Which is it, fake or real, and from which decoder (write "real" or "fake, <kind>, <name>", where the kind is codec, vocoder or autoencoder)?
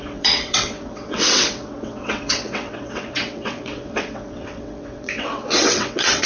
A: fake, vocoder, WaveNeXt